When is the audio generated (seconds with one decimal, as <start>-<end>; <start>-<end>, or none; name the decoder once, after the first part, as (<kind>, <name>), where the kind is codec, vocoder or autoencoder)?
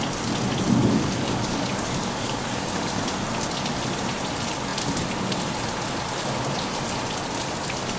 0.8-3.0 (codec, DAC)